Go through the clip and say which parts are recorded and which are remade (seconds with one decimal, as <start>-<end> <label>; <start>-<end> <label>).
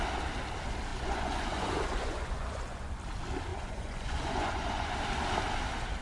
0.0-0.9 recorded; 0.9-2.9 remade; 2.9-3.5 recorded; 3.5-4.9 remade; 4.9-6.0 recorded